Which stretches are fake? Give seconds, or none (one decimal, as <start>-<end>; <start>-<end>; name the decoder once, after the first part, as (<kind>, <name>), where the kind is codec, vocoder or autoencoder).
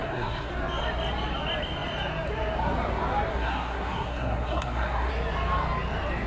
0.0-0.5 (codec, SNAC); 3.3-5.1